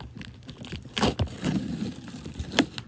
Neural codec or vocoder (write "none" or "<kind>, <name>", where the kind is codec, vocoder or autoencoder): vocoder, BigVGAN v2